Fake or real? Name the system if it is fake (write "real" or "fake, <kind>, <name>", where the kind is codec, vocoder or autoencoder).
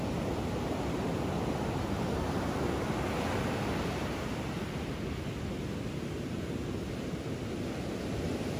real